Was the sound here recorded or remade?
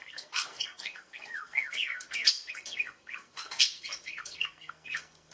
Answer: remade